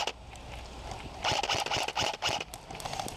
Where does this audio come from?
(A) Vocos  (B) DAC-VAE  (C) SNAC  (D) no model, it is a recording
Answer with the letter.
D